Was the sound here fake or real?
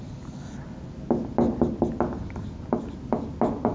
real